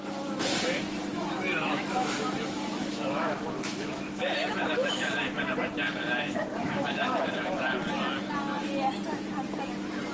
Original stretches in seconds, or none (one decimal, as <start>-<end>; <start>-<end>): 0.0-1.1; 5.2-6.5; 7.3-10.1